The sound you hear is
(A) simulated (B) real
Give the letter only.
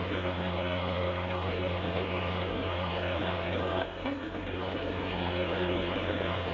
A